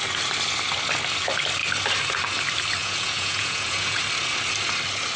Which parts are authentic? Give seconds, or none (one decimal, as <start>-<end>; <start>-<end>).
0.0-2.8; 4.0-5.2